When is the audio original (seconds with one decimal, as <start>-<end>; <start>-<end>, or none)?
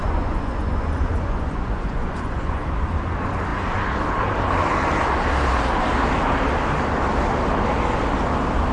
2.6-8.7